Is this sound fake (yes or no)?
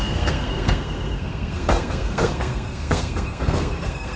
yes